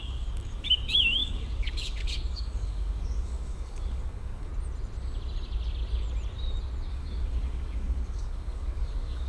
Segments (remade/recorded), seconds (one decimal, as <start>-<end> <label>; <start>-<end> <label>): 0.0-4.5 remade; 4.5-6.9 recorded; 6.9-9.3 remade